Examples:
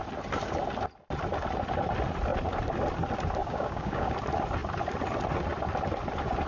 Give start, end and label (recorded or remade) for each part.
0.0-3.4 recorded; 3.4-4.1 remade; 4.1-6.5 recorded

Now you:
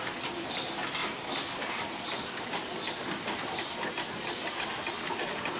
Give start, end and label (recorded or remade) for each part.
0.0-5.6 recorded

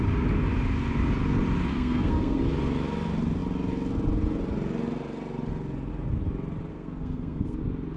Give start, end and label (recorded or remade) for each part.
0.0-1.7 recorded; 1.7-2.4 remade; 2.4-6.7 recorded; 6.7-7.6 remade; 7.6-8.0 recorded